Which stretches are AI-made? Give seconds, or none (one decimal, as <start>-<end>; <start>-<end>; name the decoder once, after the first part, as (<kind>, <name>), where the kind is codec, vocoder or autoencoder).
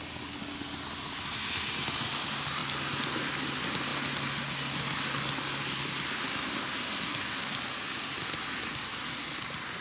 none